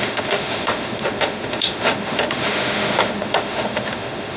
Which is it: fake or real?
fake